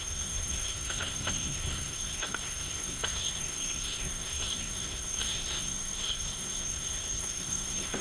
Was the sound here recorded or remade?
remade